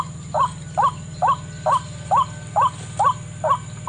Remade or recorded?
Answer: recorded